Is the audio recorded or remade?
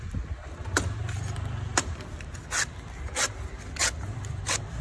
recorded